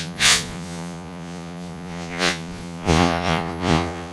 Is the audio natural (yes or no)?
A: no